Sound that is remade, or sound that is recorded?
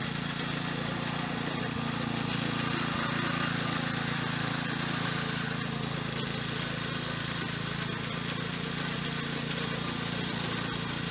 recorded